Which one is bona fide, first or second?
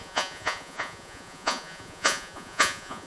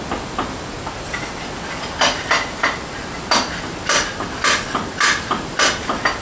second